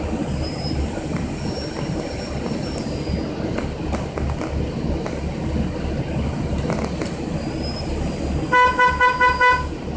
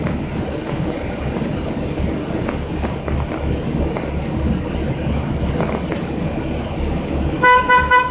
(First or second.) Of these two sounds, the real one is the first